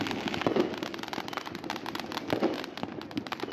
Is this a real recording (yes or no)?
yes